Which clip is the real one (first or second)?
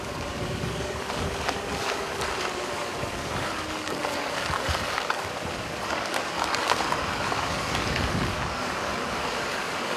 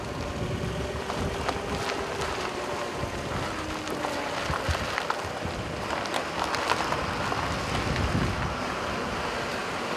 second